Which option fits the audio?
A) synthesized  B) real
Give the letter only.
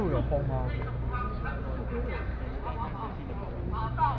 B